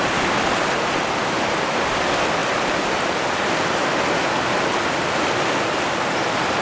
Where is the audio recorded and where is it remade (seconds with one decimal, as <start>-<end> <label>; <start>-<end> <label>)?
0.0-6.6 recorded

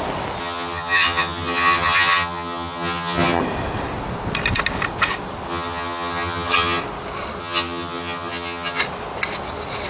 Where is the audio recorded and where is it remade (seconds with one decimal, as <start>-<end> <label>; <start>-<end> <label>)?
0.0-0.4 recorded; 0.4-3.4 remade; 3.4-5.5 recorded; 5.5-6.8 remade; 6.8-7.4 recorded; 7.4-8.8 remade; 8.8-9.9 recorded